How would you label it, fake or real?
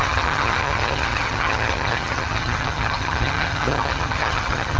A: fake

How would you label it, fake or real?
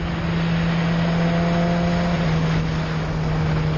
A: real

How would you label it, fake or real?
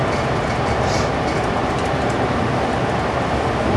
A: real